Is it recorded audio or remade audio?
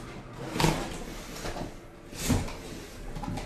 recorded